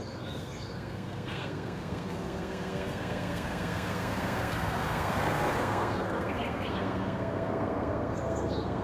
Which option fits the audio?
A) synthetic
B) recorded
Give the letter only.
A